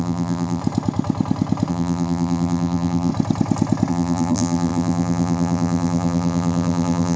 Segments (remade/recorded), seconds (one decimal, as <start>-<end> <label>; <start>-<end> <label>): 0.0-0.6 remade; 0.6-1.7 recorded; 1.7-3.1 remade; 3.1-3.9 recorded; 3.9-7.2 remade